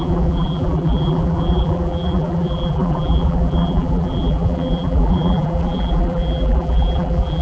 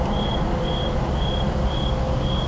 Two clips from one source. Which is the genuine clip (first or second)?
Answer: second